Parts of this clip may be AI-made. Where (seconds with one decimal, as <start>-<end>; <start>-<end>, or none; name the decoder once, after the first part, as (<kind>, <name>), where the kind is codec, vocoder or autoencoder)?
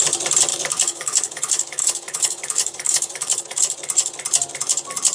0.5-3.6 (codec, DAC)